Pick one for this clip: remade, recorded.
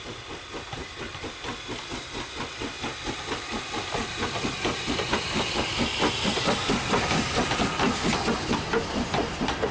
recorded